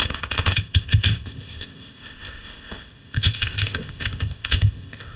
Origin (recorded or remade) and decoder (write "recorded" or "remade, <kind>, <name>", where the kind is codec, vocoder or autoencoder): remade, codec, ZipCodec